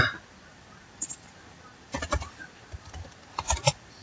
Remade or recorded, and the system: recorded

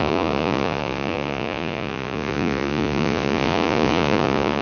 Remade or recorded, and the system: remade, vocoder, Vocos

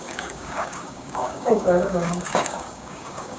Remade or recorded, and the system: remade, codec, DAC